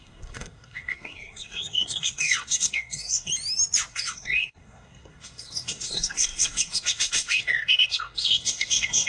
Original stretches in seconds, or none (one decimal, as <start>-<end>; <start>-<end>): 3.3-3.9